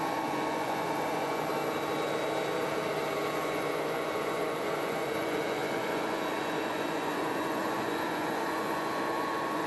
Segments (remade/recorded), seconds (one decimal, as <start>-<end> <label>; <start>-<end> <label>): 0.0-1.5 remade; 1.5-3.3 recorded; 3.3-9.7 remade